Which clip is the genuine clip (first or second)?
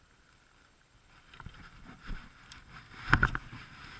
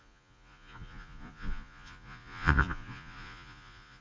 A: first